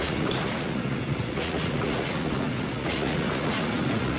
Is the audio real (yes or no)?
no